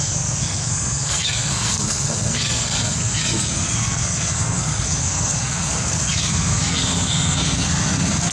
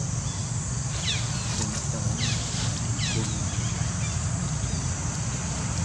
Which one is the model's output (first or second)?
first